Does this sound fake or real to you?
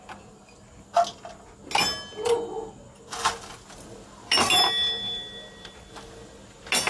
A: real